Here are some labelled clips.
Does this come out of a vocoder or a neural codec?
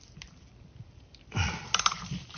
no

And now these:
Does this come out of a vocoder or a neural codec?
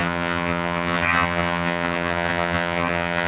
yes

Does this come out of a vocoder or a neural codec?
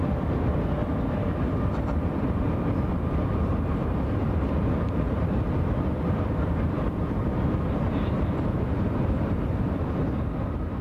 yes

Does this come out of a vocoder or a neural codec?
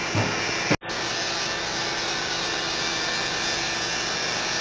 no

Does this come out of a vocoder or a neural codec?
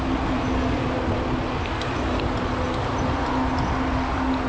no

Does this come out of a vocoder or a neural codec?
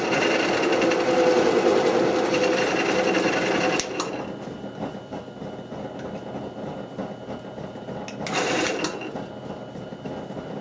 no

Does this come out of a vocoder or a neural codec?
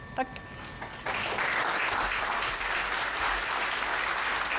no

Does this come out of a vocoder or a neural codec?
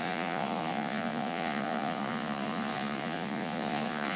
yes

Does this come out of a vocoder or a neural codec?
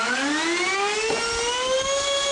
no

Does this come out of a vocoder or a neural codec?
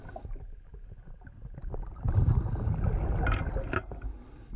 no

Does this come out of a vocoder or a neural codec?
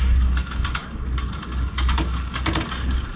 yes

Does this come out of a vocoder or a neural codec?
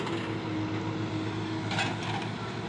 no